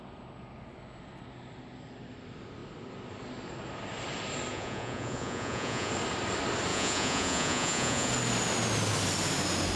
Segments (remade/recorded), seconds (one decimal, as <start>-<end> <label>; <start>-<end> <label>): 0.0-4.5 recorded; 4.5-5.9 remade; 5.9-6.7 recorded; 6.7-8.1 remade; 8.1-9.8 recorded